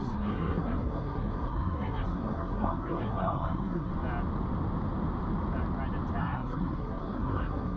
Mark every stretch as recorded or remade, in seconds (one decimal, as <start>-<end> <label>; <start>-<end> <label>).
0.0-3.9 remade; 3.9-6.2 recorded; 6.2-7.8 remade